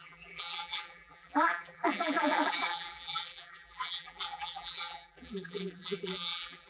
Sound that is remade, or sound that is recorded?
remade